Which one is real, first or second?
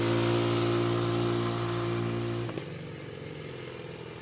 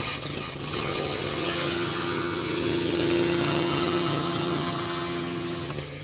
first